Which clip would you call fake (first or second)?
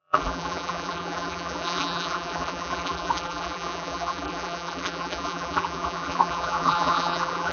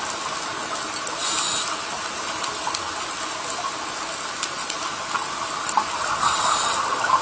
first